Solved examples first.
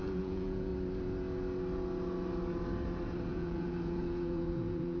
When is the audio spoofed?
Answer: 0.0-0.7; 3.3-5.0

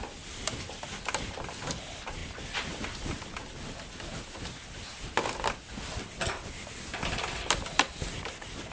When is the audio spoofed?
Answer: none

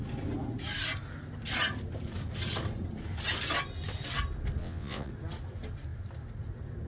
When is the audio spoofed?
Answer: 4.6-5.1

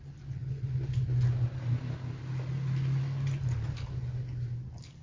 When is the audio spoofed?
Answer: none

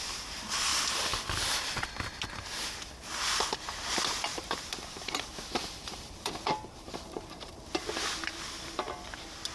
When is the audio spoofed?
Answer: 4.3-8.9

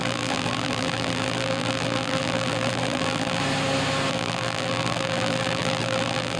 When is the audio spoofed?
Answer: 0.0-3.4; 4.1-6.4

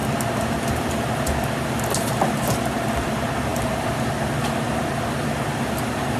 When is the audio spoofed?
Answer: none